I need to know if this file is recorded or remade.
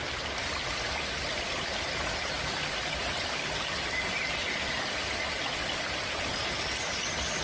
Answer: recorded